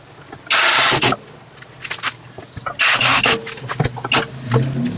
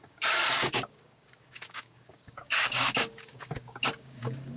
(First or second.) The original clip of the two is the first